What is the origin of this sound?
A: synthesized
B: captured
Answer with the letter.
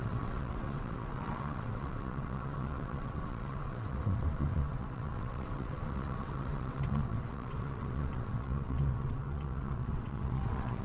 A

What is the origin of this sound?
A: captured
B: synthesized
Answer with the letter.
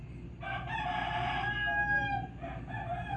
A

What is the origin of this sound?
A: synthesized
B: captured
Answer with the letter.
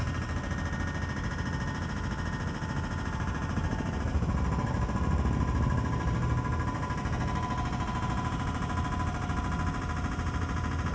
B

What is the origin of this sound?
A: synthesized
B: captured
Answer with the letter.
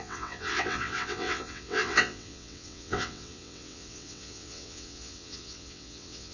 A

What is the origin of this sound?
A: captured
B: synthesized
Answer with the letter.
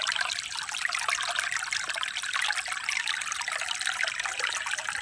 A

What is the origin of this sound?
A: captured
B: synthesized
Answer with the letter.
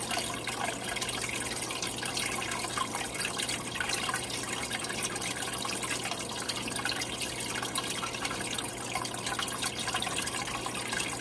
A